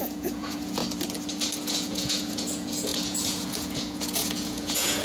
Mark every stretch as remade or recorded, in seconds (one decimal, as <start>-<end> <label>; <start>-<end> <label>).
0.0-0.8 remade; 0.8-1.6 recorded; 1.6-5.0 remade